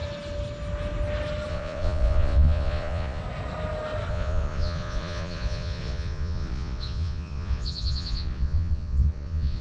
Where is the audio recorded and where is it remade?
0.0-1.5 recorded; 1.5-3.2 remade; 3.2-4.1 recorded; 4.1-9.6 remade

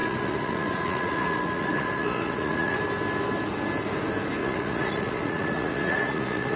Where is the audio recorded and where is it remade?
0.0-2.8 remade; 2.8-4.4 recorded; 4.4-6.6 remade